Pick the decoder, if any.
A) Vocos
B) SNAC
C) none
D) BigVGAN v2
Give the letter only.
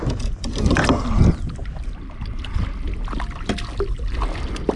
C